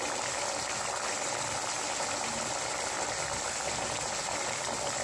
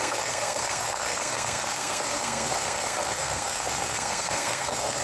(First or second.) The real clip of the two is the first